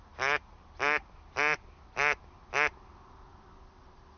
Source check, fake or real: real